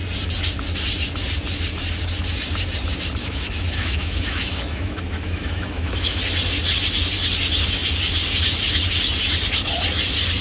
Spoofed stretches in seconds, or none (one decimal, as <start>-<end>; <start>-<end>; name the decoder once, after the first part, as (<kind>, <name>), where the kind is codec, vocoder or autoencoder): 3.2-6.2 (autoencoder, DAC-VAE)